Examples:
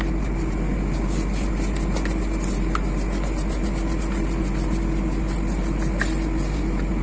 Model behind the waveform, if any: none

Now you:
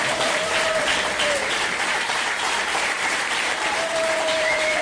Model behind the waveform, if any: vocoder, BigVGAN v2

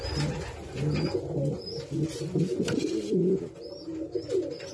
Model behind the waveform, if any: none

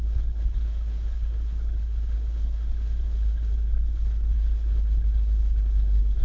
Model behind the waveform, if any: codec, HILCodec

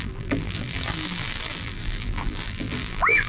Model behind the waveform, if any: vocoder, BigVGAN v2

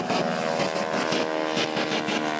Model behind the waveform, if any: none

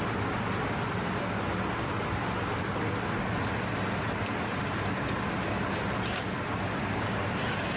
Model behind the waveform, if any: none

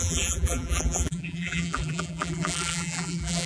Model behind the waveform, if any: vocoder, BigVGAN v2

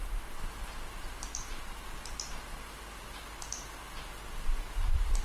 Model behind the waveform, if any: none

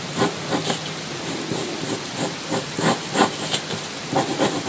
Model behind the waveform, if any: none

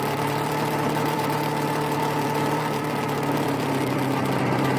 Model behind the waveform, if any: vocoder, BigVGAN v2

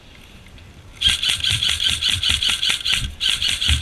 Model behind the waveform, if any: none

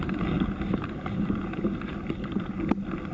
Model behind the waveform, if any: none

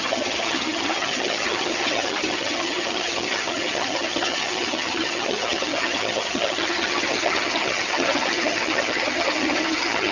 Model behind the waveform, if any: vocoder, HiFi-GAN